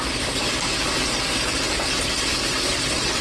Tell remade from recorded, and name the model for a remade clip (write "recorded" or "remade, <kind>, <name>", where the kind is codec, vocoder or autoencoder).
recorded